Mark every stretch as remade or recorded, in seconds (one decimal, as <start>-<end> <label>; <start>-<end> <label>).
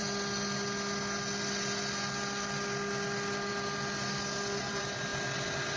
0.0-5.8 recorded